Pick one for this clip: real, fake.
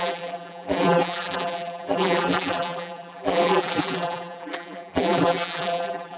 fake